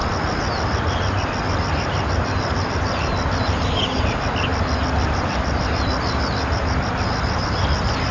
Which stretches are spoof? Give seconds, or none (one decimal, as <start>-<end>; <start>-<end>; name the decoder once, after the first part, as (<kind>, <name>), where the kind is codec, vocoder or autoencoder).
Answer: none